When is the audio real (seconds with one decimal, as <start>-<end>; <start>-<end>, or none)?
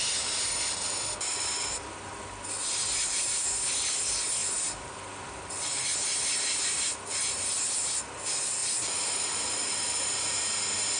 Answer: 0.0-4.4; 5.0-11.0